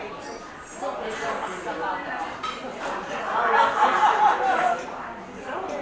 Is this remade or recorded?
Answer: recorded